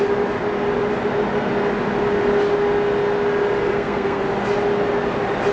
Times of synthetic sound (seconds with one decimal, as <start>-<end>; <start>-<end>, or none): 3.6-4.2